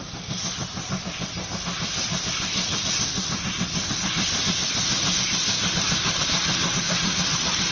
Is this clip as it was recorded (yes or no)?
no